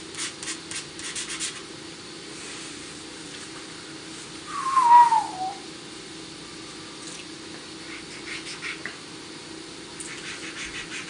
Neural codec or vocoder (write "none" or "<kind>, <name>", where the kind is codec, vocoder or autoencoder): none